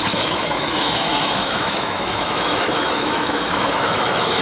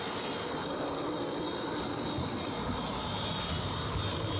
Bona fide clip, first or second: second